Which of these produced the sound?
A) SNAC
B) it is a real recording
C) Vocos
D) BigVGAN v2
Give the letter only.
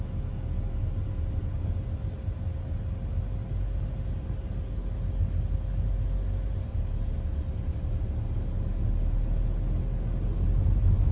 B